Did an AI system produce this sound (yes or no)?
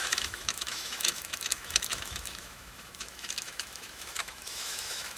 yes